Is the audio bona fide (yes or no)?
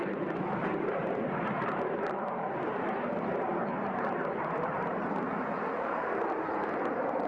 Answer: no